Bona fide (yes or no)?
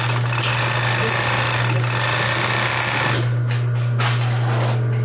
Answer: yes